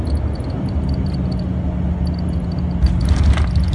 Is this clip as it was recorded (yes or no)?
yes